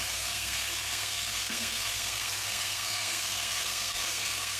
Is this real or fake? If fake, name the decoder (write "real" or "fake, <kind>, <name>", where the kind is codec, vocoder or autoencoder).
fake, codec, SNAC